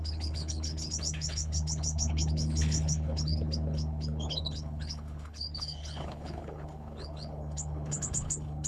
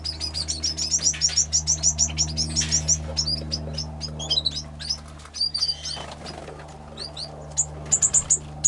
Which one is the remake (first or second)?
first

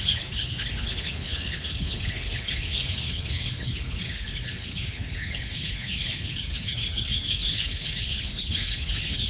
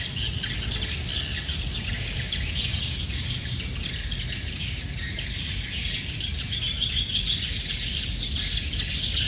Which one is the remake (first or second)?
first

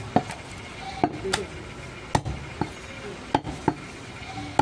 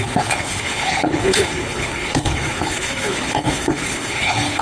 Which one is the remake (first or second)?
second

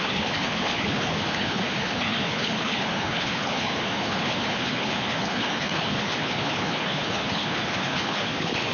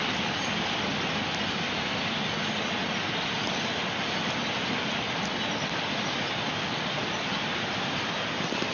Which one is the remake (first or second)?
first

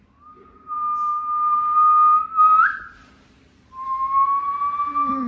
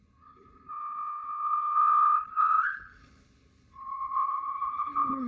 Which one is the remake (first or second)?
second